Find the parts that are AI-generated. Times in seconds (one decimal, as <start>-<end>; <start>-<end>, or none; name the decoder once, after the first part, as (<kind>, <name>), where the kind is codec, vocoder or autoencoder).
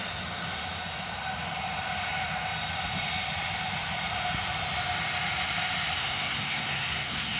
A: 6.0-7.4 (codec, SNAC)